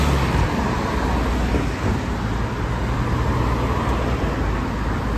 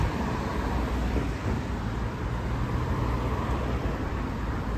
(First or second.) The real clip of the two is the first